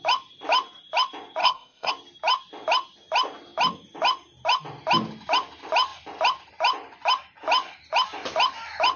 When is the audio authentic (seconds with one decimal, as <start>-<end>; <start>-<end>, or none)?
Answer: 0.0-1.4; 1.9-9.0